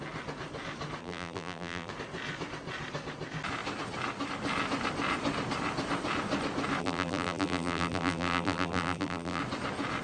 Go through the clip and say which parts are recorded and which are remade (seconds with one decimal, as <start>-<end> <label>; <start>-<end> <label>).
0.0-1.0 recorded; 1.0-1.9 remade; 1.9-6.8 recorded; 6.8-9.4 remade; 9.4-10.0 recorded